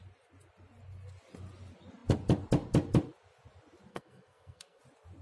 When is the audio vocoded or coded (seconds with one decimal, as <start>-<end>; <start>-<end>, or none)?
3.9-4.8